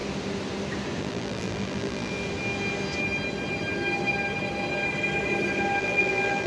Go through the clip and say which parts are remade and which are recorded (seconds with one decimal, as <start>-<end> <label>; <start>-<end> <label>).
0.0-1.0 recorded; 1.0-2.1 remade; 2.1-5.8 recorded; 5.8-6.5 remade